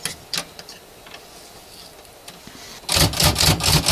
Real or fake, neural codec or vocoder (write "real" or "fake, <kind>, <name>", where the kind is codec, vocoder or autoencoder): real